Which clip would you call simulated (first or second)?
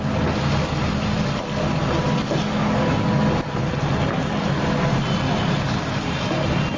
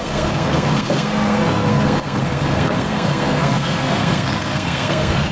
second